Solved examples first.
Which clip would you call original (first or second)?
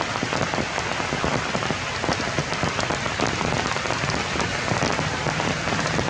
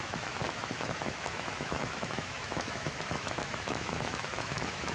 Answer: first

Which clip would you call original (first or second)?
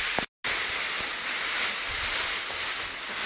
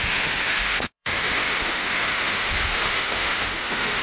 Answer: first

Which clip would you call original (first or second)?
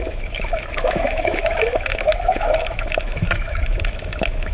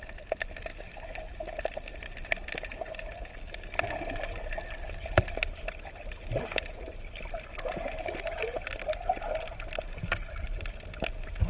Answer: second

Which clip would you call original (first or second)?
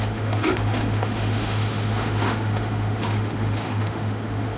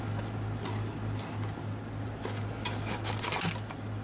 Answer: second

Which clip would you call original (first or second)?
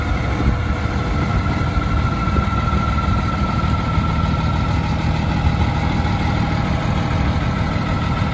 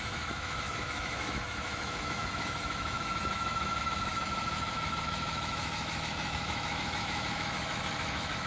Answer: first